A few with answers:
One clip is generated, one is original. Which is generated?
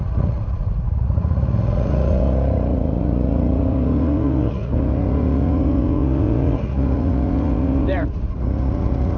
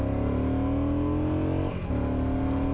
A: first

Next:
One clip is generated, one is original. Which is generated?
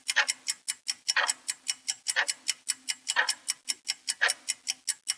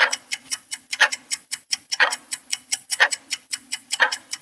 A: second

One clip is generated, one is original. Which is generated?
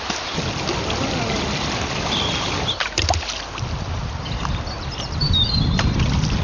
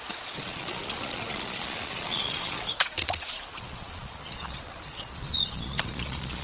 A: second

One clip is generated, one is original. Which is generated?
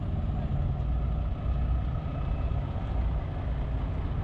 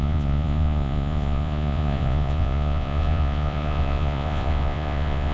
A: second